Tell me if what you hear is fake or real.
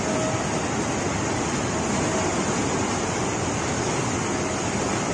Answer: real